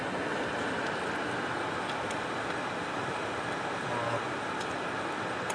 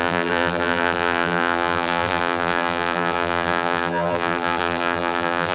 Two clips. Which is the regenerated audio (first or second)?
second